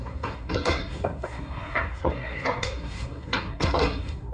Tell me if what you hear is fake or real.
fake